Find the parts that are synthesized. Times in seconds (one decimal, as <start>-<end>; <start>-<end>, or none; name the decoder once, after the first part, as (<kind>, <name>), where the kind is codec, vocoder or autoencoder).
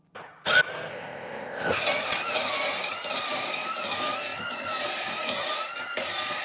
0.9-1.7 (codec, ZipCodec)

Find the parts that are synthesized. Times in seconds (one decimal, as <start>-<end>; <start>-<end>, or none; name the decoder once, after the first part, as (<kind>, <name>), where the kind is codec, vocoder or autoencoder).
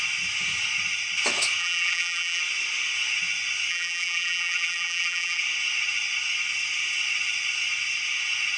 1.6-2.4 (vocoder, BigVGAN v2); 3.7-5.4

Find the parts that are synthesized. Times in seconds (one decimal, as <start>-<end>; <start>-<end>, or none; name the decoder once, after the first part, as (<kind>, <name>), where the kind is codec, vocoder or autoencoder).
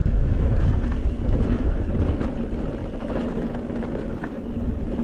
0.0-1.9 (codec, SNAC)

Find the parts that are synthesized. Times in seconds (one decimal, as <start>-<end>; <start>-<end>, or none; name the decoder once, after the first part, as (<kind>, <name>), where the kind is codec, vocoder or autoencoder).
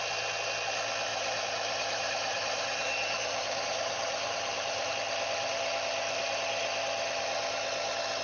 1.1-4.9 (vocoder, BigVGAN v2)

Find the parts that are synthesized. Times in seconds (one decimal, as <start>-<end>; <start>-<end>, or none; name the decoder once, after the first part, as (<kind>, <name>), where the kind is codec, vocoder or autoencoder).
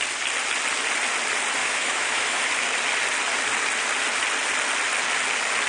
1.6-2.4 (autoencoder, DAC-VAE)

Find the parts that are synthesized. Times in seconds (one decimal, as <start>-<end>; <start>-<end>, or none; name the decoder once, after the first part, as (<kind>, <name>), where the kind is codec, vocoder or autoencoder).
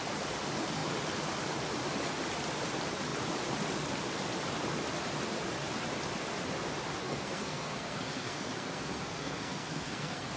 7.0-10.4 (codec, SNAC)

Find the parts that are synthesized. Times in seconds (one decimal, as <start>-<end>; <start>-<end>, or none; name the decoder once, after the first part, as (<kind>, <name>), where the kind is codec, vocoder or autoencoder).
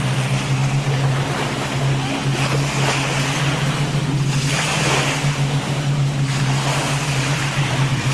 none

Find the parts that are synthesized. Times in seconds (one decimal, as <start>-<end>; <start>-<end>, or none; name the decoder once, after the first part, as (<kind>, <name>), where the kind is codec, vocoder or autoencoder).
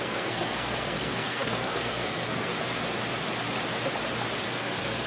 0.0-2.5 (codec, SNAC); 4.4-5.1